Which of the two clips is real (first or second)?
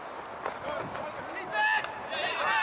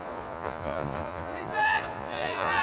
first